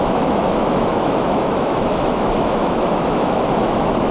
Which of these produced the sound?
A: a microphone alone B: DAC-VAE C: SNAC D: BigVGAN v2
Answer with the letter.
B